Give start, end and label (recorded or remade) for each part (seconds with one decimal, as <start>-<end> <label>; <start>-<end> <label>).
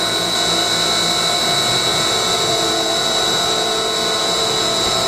0.0-0.6 remade; 0.6-1.4 recorded; 1.4-5.1 remade